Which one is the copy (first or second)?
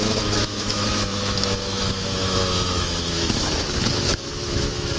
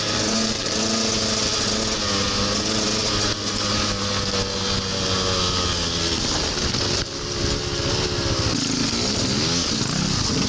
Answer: first